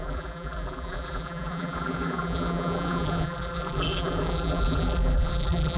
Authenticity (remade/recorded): remade